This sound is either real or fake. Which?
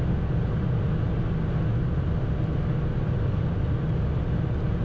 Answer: real